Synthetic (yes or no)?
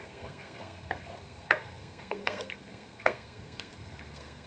yes